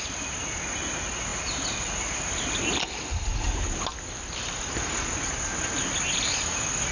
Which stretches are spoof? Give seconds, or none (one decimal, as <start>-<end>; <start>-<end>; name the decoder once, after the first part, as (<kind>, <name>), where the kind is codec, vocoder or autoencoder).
none